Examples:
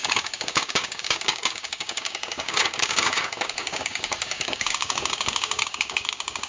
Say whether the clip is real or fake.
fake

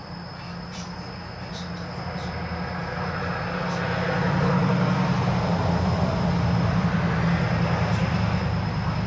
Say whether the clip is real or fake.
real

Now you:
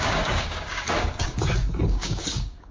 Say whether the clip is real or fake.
fake